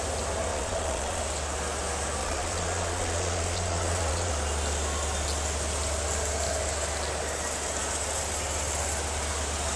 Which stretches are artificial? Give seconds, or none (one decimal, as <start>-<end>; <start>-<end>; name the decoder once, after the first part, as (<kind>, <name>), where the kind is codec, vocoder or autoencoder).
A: 0.5-1.2 (vocoder, Vocos); 2.2-4.3